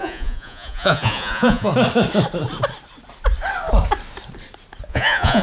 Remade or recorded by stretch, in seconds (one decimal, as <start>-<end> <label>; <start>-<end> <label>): 0.0-1.7 remade; 1.7-4.9 recorded; 4.9-5.4 remade